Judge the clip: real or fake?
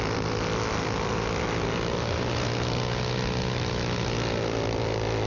real